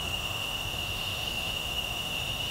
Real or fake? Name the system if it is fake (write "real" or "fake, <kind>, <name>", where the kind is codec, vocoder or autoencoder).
fake, autoencoder, DAC-VAE